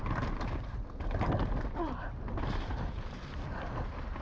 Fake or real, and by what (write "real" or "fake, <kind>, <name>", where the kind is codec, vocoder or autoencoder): real